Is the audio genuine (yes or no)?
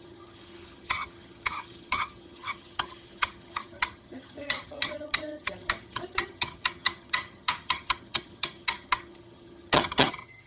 no